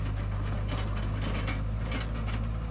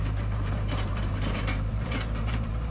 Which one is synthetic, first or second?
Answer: second